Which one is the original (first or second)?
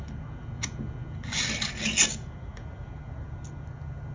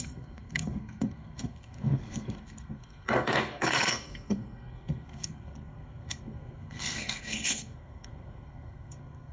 first